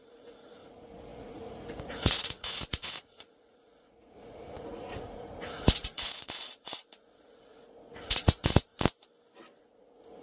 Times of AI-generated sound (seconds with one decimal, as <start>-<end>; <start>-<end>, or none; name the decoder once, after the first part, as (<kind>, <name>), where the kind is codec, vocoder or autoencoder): 0.0-8.7 (vocoder, Vocos); 9.6-10.2